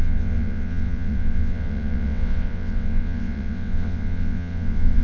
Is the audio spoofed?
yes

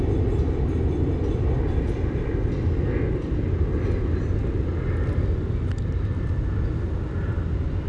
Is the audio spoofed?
no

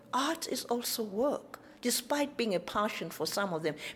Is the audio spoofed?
no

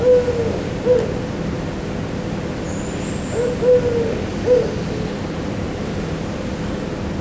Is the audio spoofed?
no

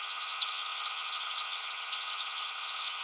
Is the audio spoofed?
yes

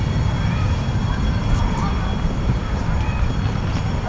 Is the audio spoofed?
no